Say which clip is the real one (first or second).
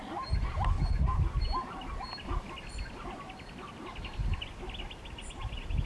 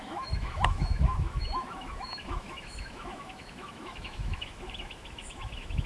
first